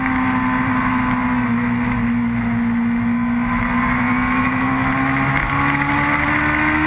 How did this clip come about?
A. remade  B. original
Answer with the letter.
B